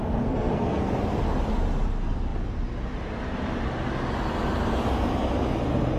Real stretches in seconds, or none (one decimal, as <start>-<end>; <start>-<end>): 0.9-6.0